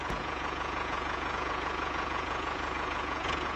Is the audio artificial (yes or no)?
yes